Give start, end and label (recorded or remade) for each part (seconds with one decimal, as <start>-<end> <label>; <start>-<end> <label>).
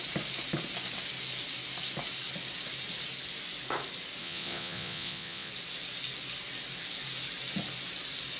0.0-4.2 recorded; 4.2-5.5 remade; 5.5-8.4 recorded